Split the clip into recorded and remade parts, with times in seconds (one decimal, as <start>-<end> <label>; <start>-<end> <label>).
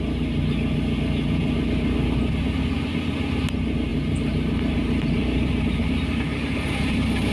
0.0-3.9 recorded; 3.9-5.8 remade; 5.8-7.3 recorded